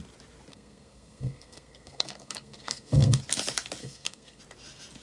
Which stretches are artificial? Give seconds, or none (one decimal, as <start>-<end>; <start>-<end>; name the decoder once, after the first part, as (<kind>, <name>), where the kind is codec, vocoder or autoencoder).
0.5-3.2 (codec, SNAC); 3.8-4.4

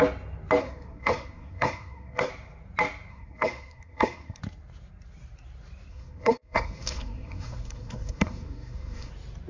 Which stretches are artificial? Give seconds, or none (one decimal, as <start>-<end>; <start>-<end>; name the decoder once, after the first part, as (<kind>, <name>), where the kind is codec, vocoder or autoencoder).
0.6-2.3 (codec, SNAC); 3.1-4.4; 5.9-9.1

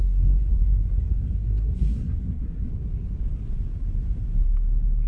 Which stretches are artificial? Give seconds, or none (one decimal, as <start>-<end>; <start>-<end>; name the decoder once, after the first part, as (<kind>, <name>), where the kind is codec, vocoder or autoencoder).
0.0-2.7 (codec, SNAC)

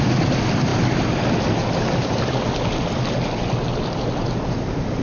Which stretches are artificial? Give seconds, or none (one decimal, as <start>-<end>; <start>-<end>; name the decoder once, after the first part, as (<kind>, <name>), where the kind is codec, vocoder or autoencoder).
none

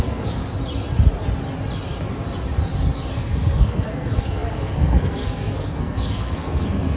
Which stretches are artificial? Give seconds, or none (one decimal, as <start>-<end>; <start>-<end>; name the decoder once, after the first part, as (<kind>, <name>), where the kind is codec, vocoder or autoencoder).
0.0-0.4 (codec, SNAC); 3.1-7.0

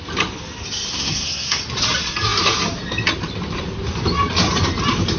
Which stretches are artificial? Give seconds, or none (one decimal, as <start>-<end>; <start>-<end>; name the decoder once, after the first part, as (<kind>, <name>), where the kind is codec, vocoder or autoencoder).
0.9-1.6 (codec, SNAC)